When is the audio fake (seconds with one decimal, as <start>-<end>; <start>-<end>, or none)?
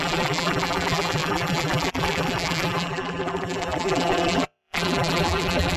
0.0-5.8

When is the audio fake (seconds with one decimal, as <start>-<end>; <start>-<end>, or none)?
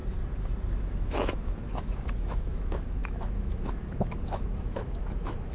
0.8-5.5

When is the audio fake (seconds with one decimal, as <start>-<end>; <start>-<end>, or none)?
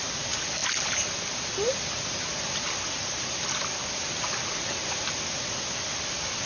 none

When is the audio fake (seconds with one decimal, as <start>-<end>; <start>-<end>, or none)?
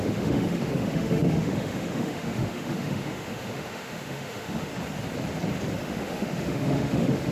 0.0-4.7; 5.8-7.3